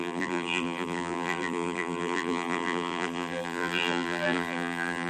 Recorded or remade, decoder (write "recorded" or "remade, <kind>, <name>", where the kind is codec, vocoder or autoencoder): remade, vocoder, BigVGAN v2